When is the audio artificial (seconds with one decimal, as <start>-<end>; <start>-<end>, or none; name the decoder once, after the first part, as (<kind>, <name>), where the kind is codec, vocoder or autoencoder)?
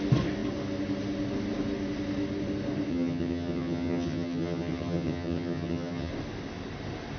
2.9-6.1 (vocoder, HiFi-GAN)